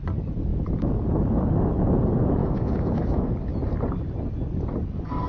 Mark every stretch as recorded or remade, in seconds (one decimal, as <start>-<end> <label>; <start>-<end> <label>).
0.0-2.4 recorded; 2.4-3.3 remade; 3.3-5.3 recorded